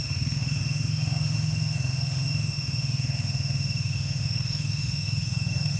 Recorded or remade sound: remade